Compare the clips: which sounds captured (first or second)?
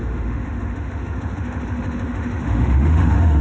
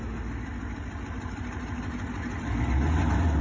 second